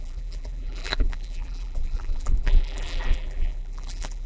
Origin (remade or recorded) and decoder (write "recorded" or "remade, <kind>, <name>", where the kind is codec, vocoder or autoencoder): remade, vocoder, BigVGAN v2